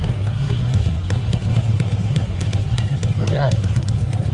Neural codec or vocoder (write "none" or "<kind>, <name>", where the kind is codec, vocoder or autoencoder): codec, SNAC